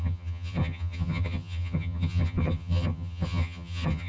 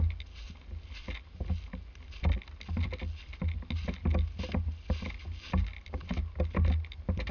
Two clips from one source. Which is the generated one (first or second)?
first